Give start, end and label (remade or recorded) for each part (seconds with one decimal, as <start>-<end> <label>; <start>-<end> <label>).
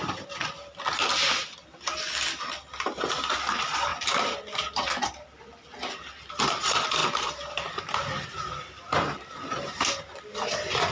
0.0-7.0 remade; 7.0-7.7 recorded; 7.7-10.9 remade